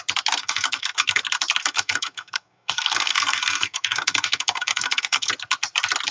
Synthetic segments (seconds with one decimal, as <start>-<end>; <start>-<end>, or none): 0.4-1.2; 1.6-5.3